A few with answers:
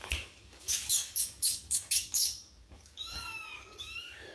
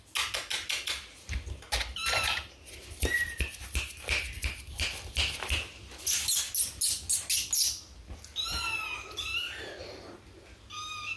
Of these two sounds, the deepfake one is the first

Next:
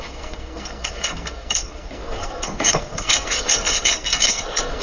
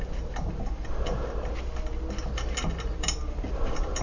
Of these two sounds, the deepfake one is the first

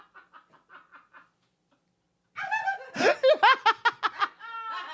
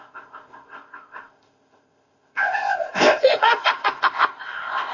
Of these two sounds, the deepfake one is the second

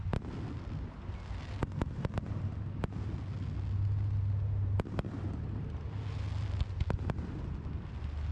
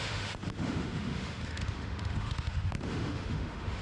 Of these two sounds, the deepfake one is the second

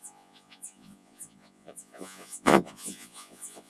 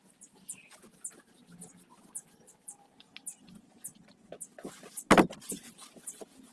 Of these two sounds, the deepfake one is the first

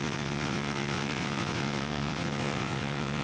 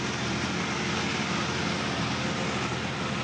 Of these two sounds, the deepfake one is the first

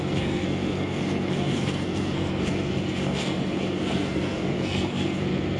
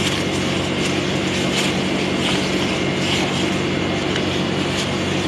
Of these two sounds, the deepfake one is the first